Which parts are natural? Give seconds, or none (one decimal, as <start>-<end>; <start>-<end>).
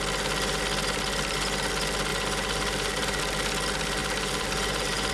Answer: 0.0-2.1; 3.2-4.0